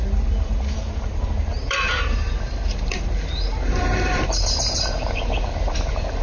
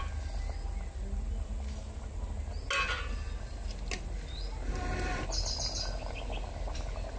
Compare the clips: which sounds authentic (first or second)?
second